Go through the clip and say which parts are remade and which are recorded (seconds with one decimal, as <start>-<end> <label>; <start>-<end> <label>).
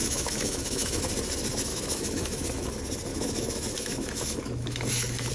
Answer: 0.0-1.0 remade; 1.0-1.7 recorded; 1.7-2.7 remade; 2.7-3.1 recorded; 3.1-5.3 remade